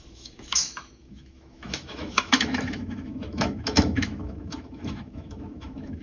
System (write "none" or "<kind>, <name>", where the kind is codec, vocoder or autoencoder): autoencoder, DAC-VAE